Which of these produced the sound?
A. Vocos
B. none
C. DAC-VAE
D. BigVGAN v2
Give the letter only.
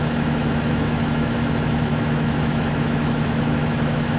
C